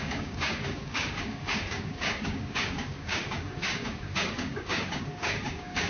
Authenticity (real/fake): fake